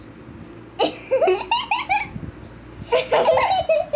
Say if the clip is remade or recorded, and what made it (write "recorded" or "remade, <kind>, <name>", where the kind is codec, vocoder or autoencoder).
recorded